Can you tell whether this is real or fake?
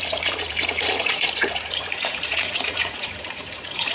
fake